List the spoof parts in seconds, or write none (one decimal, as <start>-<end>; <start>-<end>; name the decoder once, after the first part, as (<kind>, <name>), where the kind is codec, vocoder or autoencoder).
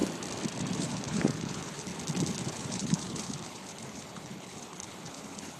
0.8-1.9 (codec, HILCodec); 2.5-5.6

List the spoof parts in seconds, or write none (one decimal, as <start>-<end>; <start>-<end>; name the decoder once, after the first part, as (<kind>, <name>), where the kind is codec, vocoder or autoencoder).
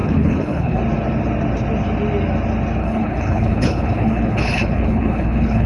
0.0-0.8 (codec, HILCodec); 2.8-5.7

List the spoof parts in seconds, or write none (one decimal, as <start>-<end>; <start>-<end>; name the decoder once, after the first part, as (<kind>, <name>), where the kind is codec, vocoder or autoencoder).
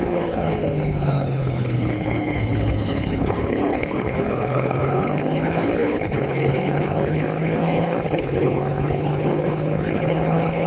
0.0-10.7 (codec, HILCodec)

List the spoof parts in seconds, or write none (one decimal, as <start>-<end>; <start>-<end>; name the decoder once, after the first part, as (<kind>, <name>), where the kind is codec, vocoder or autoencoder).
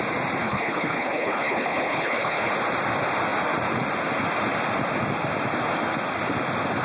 0.4-2.5 (codec, HILCodec)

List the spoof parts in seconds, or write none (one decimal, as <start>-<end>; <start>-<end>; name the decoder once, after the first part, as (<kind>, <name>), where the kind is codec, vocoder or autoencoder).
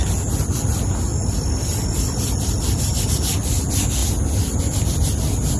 none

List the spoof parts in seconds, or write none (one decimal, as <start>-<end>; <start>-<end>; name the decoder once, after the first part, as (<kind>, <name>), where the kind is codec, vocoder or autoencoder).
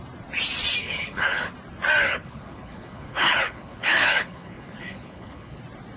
0.8-1.5 (codec, HILCodec); 2.0-5.6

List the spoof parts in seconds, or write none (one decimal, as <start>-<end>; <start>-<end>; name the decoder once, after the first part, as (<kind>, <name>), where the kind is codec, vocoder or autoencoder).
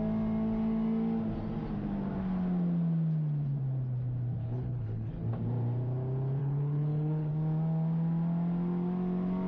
4.4-5.3 (codec, HILCodec); 6.4-7.3